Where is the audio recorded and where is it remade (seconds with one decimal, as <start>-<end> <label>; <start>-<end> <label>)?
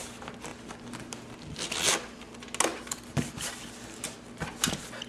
0.0-0.5 recorded; 0.5-1.7 remade; 1.7-2.7 recorded; 2.7-4.0 remade; 4.0-5.1 recorded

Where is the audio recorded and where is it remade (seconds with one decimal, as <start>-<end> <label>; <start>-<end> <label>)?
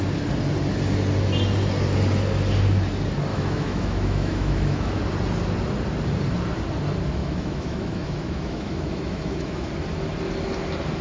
0.0-3.3 recorded; 3.3-5.0 remade; 5.0-7.2 recorded; 7.2-9.7 remade; 9.7-11.0 recorded